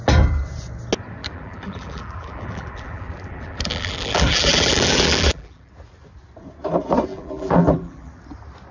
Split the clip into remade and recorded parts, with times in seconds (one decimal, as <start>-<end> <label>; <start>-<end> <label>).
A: 0.0-1.2 recorded; 1.2-5.7 remade; 5.7-7.1 recorded; 7.1-8.1 remade; 8.1-8.7 recorded